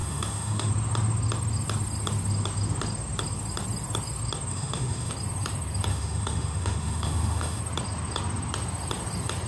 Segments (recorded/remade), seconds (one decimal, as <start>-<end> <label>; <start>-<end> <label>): 0.0-0.7 remade; 0.7-4.5 recorded; 4.5-5.1 remade; 5.1-5.9 recorded; 5.9-7.6 remade; 7.6-9.5 recorded